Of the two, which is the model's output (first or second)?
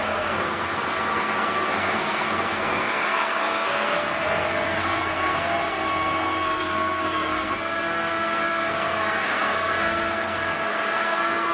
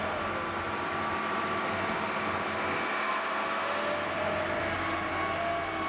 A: first